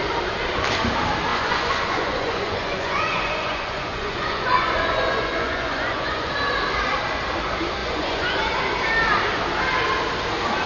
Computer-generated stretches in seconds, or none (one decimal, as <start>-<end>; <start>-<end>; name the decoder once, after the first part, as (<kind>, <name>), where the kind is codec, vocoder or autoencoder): 1.3-6.3 (vocoder, Vocos); 7.8-8.6

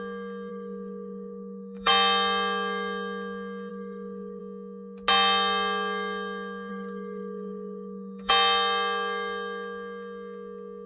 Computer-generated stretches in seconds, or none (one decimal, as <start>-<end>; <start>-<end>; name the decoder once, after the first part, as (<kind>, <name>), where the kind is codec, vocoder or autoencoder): 0.5-1.9 (codec, DAC); 3.7-4.4; 6.7-8.3

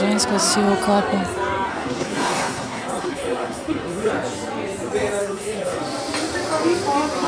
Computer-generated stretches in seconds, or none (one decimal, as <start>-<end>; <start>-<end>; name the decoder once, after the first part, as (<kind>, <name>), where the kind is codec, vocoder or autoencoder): 1.7-4.1 (codec, SNAC); 5.2-5.8

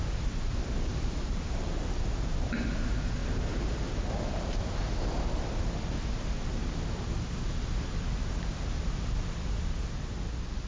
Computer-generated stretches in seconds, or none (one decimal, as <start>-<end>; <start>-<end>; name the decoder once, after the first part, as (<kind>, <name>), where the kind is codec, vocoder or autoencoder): 0.9-1.8 (vocoder, BigVGAN v2); 3.2-4.0

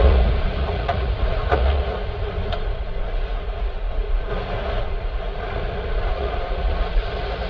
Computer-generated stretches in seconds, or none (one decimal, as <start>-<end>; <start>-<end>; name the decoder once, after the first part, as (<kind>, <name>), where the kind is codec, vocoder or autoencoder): 0.0-4.3 (vocoder, Vocos); 4.8-7.5

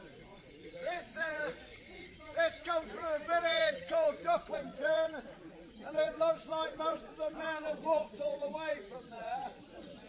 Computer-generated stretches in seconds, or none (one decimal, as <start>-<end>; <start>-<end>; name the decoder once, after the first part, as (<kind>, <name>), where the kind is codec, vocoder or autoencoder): 0.0-10.1 (vocoder, Vocos)

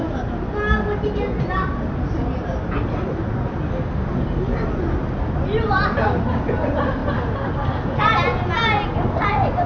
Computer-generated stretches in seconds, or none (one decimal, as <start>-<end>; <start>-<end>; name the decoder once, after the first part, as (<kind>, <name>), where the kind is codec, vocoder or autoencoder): none

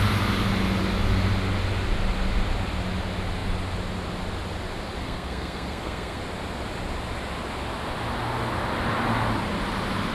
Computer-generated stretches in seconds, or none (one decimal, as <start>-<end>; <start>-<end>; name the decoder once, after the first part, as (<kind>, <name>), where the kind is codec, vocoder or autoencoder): 5.0-6.2 (codec, SNAC)